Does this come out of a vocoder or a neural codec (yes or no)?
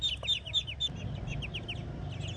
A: no